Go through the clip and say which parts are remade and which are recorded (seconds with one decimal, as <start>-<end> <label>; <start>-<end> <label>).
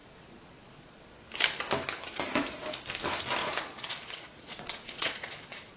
0.0-1.1 remade; 1.1-3.4 recorded; 3.4-5.8 remade